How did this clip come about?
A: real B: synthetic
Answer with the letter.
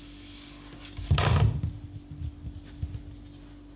A